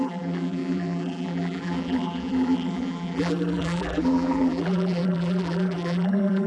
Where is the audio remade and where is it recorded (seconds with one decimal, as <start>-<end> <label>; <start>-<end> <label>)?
0.0-6.5 remade